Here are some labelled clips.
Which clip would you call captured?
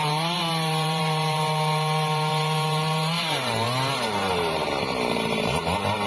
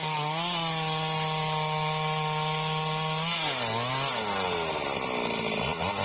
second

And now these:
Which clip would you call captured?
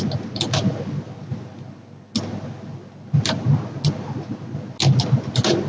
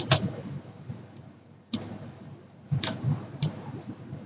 first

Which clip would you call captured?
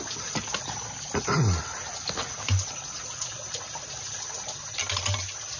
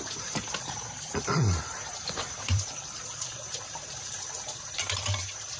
first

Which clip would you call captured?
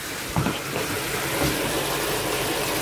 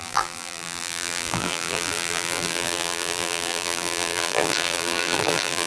first